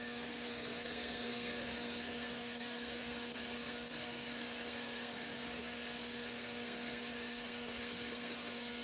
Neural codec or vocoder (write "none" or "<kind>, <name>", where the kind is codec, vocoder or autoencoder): codec, SNAC